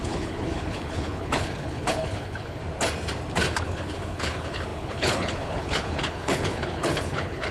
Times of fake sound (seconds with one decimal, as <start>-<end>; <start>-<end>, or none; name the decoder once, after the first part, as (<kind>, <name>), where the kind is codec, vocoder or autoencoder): 0.0-2.6 (codec, HILCodec); 3.5-7.5